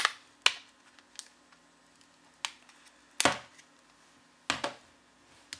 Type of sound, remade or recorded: recorded